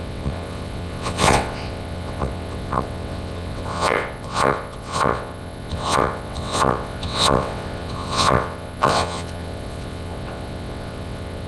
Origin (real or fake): fake